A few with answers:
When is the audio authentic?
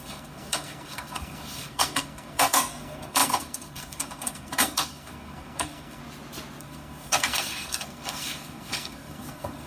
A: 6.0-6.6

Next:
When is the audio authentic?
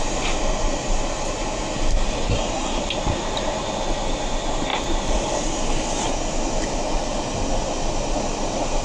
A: 0.0-2.3; 2.8-8.8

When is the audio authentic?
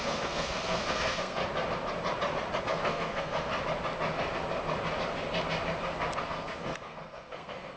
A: 1.4-2.6; 3.5-6.2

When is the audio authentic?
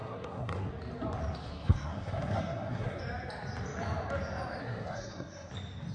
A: 0.7-1.4; 3.0-4.6; 5.5-5.9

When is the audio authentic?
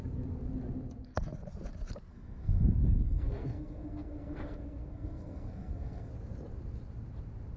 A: 0.0-2.1; 6.1-7.6